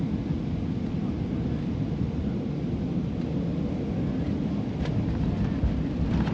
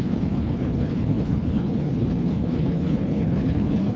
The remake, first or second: second